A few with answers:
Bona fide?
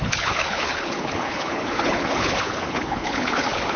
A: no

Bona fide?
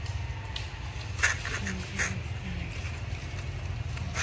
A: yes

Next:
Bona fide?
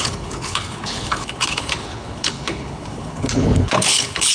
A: no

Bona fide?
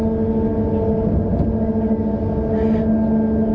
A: yes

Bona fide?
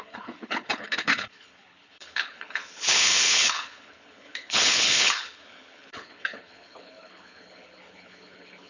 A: no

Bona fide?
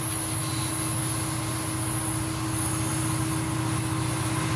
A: yes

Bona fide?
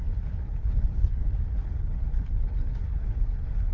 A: no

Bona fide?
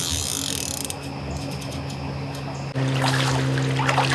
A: yes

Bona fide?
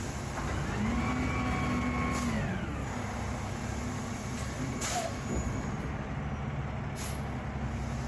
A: yes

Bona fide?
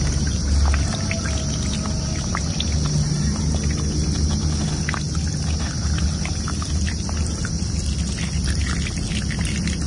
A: yes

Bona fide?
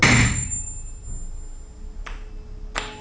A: yes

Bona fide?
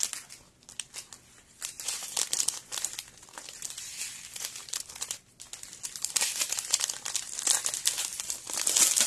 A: yes